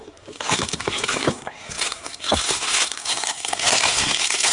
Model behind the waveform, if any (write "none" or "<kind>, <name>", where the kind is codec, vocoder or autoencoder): codec, SNAC